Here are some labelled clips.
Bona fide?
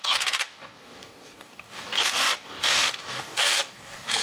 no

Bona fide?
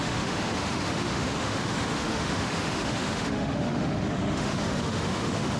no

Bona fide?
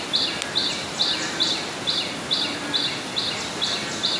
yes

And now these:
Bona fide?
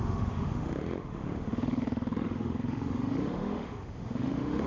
no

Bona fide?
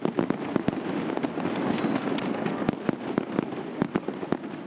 yes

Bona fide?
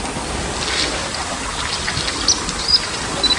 yes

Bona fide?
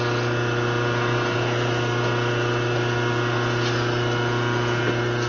yes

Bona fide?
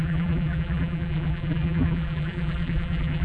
no